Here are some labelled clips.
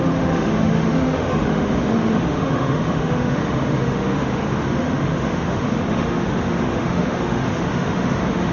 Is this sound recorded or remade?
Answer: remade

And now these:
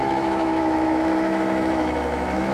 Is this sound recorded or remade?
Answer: remade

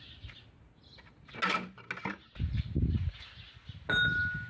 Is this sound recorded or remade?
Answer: recorded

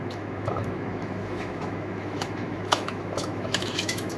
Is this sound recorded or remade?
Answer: remade